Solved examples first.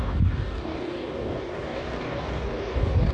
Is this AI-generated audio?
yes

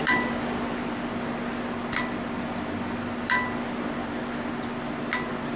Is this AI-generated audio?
no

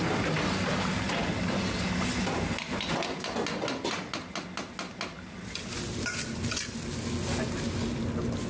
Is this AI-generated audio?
no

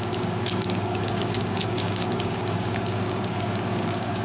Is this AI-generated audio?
yes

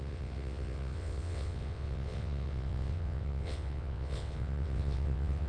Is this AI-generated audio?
yes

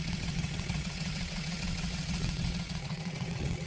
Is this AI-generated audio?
yes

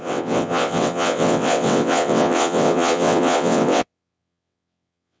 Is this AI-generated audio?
yes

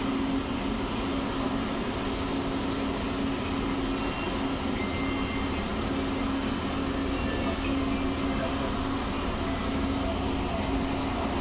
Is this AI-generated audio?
no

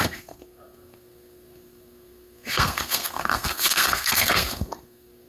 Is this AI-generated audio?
yes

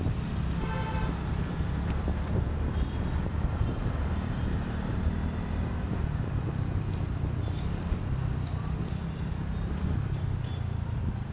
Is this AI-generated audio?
yes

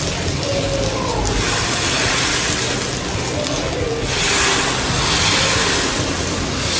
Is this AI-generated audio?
no